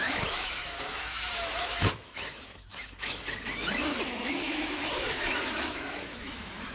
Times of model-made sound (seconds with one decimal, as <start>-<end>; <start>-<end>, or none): 0.0-6.7